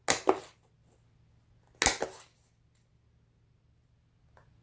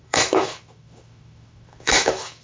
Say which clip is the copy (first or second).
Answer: second